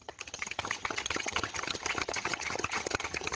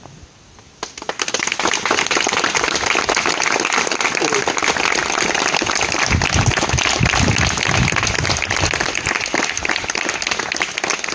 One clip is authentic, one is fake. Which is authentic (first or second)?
second